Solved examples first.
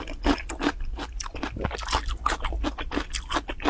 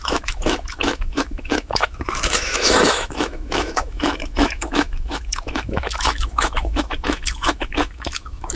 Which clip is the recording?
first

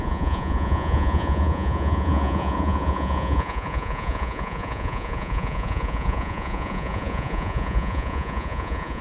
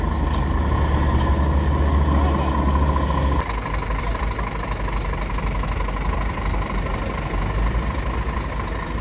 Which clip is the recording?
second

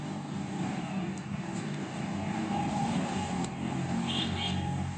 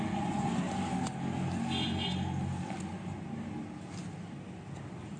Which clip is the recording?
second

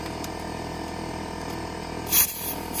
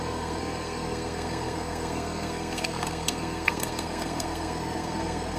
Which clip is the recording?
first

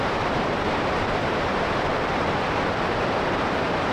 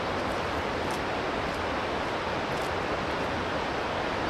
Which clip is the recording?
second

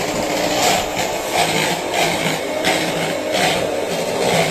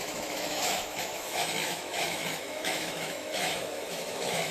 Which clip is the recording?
first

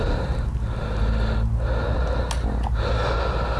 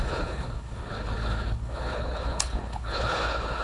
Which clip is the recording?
first